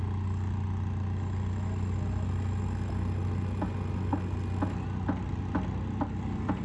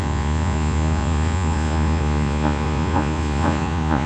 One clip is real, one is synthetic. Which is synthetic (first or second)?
second